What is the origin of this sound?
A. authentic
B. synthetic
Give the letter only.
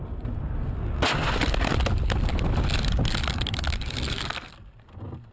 A